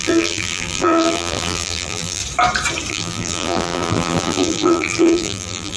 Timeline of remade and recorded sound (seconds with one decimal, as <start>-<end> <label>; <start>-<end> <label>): 0.0-2.2 remade; 2.2-2.9 recorded; 2.9-5.8 remade